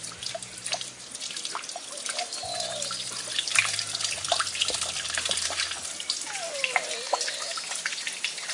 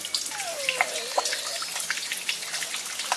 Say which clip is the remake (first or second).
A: first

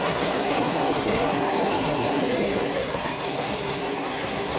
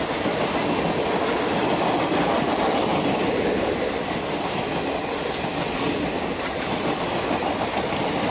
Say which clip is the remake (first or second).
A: first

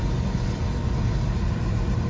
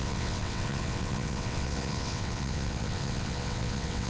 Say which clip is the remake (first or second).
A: second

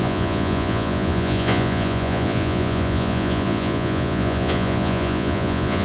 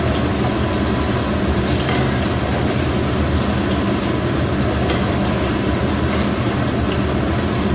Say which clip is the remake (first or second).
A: first